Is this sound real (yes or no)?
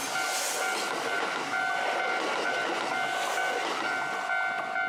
yes